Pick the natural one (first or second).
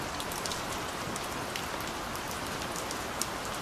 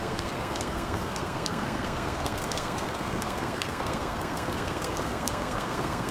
first